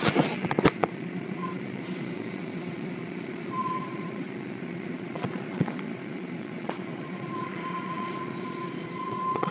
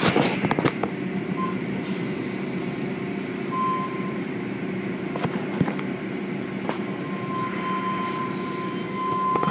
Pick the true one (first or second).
second